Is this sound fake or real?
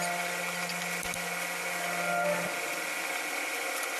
real